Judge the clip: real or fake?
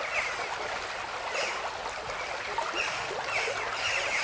real